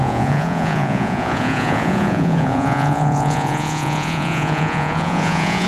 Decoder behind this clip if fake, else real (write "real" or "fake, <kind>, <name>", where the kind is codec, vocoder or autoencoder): fake, vocoder, Vocos